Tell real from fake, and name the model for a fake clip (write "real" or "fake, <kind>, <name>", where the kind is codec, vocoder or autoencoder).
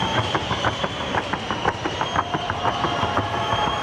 fake, vocoder, BigVGAN v2